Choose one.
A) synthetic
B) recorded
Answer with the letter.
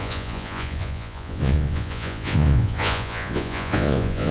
A